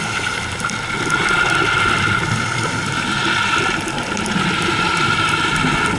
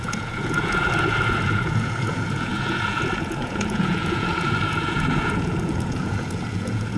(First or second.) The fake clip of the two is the second